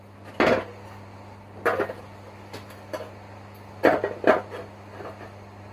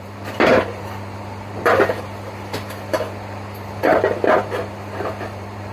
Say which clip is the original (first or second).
first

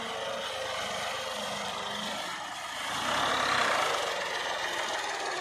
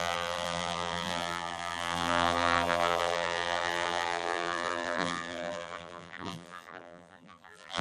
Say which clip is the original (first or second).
first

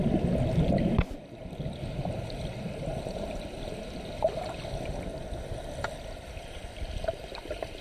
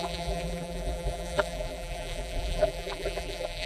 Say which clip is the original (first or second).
first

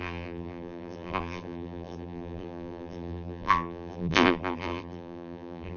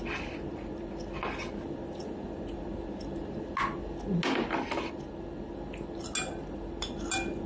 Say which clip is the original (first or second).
second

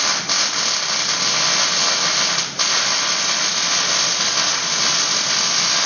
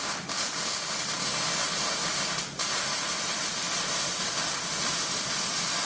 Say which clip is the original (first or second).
first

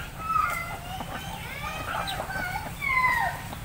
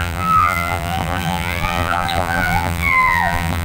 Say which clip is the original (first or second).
first